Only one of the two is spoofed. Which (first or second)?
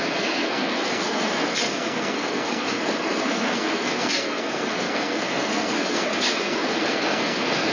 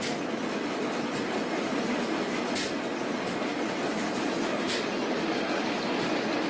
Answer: first